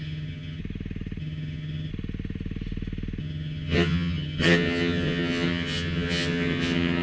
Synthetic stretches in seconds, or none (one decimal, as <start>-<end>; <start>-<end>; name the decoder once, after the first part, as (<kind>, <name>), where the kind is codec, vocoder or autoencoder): 0.0-0.6 (vocoder, HiFi-GAN); 1.2-1.9; 3.2-7.0

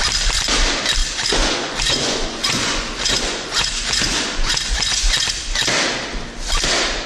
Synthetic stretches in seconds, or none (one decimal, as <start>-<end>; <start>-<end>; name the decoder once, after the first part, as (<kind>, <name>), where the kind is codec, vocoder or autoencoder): 1.0-5.3 (vocoder, Vocos)

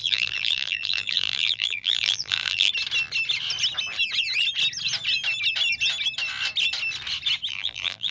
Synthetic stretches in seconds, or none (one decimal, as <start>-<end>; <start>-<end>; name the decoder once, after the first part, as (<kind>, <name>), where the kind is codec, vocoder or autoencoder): 0.0-2.7 (vocoder, BigVGAN v2); 7.5-8.1

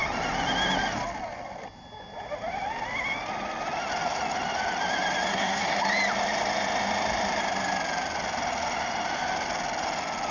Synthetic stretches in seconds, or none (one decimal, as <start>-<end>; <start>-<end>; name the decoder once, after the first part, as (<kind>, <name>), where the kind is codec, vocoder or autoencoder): 5.3-5.8 (codec, SNAC)

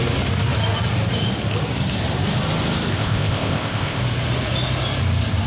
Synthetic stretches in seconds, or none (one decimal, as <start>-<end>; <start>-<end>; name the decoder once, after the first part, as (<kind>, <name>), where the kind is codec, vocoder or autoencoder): 2.9-4.0 (codec, ZipCodec)